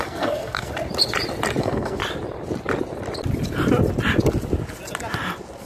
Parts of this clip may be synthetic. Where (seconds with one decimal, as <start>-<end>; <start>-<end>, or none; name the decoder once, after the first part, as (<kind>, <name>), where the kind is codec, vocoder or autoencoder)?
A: 0.0-0.7 (codec, SNAC); 1.6-2.0